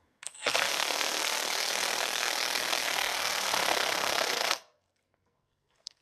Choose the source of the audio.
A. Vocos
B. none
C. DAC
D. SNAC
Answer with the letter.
D